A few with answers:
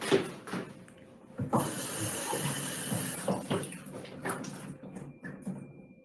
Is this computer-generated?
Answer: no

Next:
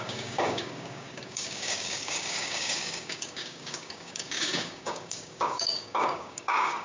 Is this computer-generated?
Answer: yes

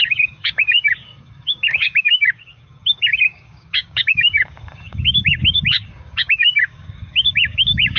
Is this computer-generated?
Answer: yes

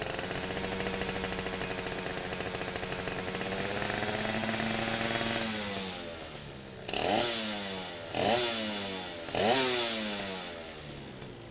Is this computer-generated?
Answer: no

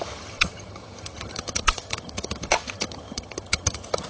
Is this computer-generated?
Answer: yes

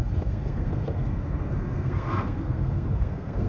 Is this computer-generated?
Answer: yes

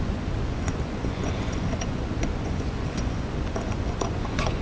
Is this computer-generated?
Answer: yes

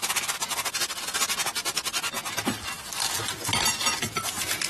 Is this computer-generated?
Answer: no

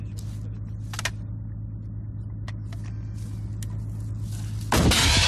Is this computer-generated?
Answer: no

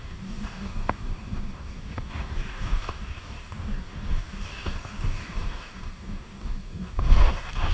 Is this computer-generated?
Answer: yes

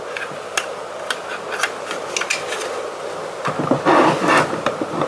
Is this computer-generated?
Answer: no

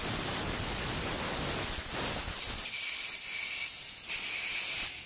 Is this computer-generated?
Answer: no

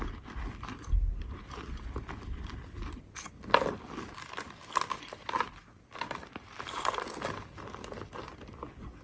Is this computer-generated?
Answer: no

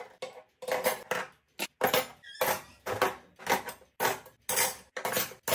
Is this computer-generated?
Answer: no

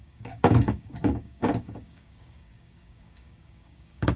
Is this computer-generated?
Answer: yes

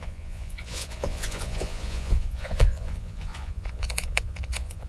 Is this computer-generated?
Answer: yes